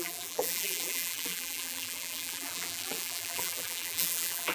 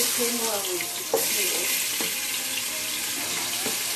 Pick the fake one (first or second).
first